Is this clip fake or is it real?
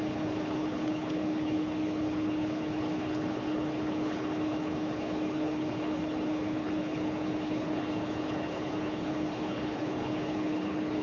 fake